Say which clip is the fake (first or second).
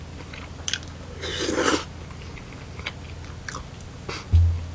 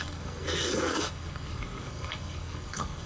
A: second